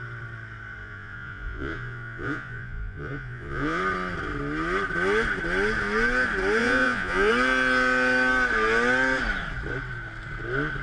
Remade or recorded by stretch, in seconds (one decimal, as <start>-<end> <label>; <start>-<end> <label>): 0.0-0.8 recorded; 0.8-3.8 remade; 3.8-6.6 recorded; 6.6-7.3 remade; 7.3-10.8 recorded